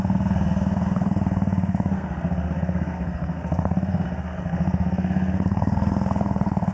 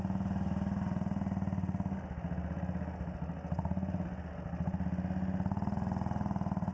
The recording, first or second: second